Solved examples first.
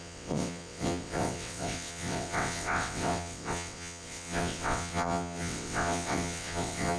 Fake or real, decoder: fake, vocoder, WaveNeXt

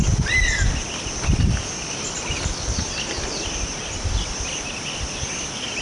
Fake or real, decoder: real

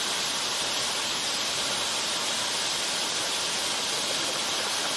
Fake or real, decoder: real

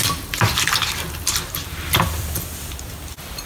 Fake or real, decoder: real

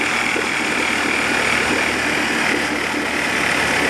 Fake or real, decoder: real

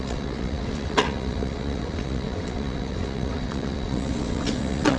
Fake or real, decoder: fake, vocoder, WaveNeXt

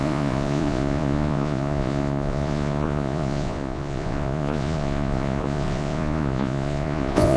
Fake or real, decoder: fake, vocoder, Vocos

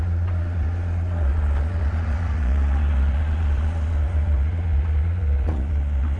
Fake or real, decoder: fake, vocoder, Vocos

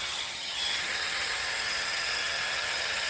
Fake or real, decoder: fake, vocoder, HiFi-GAN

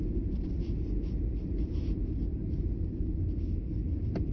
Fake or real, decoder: real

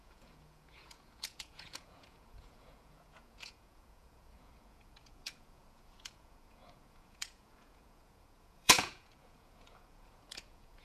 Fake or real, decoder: fake, vocoder, Vocos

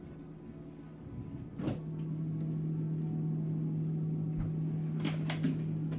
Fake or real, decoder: real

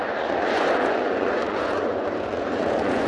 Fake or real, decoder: fake, vocoder, Vocos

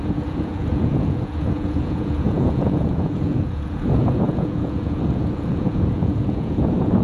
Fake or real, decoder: fake, vocoder, Vocos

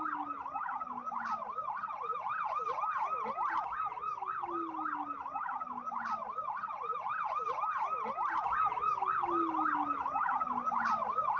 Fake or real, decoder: real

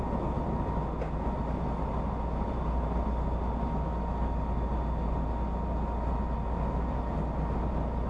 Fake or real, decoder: real